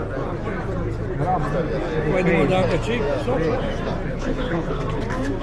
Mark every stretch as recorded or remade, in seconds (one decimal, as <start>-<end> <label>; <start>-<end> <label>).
0.0-4.1 recorded; 4.1-4.8 remade; 4.8-5.4 recorded